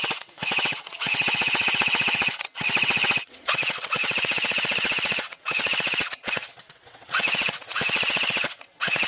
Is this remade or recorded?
remade